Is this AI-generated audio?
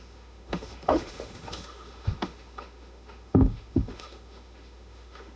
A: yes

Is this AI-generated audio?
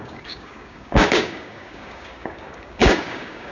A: yes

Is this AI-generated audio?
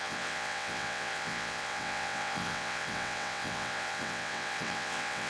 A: yes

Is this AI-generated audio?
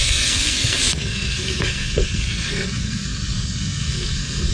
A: yes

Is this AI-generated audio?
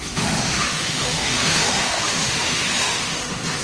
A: yes